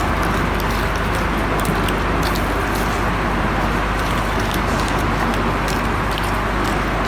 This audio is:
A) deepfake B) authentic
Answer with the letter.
B